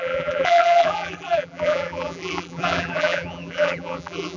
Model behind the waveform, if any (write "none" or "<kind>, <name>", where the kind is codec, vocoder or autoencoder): vocoder, BigVGAN v2